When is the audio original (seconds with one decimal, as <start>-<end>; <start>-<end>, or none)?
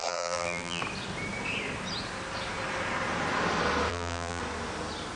0.8-3.9; 4.4-5.2